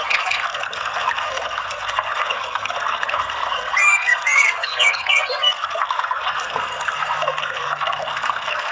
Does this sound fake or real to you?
fake